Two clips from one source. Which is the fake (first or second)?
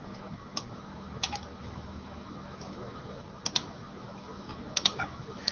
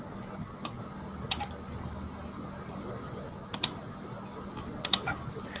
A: first